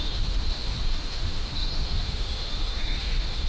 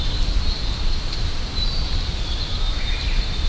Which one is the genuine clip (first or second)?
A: second